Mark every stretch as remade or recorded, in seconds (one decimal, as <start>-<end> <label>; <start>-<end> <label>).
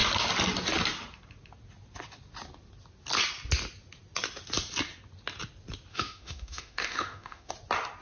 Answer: 0.0-5.9 recorded; 5.9-7.5 remade; 7.5-8.0 recorded